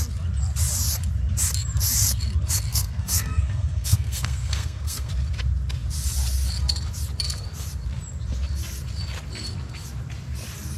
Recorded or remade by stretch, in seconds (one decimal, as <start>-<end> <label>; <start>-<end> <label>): 0.0-2.7 recorded; 2.7-5.1 remade; 5.1-10.8 recorded